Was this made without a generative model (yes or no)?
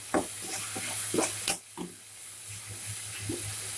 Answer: yes